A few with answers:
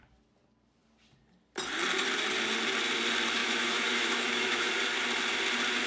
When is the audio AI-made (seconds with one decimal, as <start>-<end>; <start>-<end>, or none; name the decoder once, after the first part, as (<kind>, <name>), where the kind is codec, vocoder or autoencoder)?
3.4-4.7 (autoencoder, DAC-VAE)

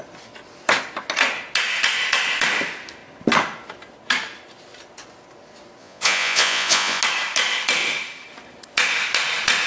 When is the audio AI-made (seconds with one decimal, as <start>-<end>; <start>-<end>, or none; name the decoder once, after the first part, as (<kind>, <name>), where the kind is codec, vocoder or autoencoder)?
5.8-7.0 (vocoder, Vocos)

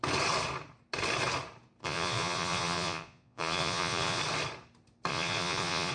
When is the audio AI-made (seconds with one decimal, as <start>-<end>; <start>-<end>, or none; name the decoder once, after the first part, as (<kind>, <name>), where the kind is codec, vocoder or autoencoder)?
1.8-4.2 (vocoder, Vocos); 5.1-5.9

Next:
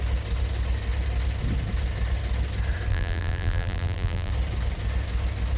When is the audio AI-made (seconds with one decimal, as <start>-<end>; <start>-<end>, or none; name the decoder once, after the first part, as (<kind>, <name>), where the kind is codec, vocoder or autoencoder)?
2.9-4.3 (vocoder, BigVGAN v2)